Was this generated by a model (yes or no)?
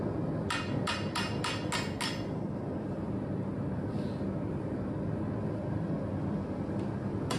no